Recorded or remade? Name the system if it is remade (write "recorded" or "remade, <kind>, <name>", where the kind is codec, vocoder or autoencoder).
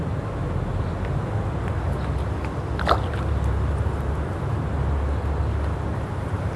recorded